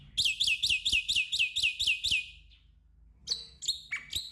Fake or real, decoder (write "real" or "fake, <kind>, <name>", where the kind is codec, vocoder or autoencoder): real